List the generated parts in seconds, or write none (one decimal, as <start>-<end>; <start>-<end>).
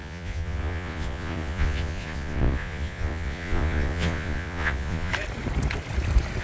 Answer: 0.0-5.1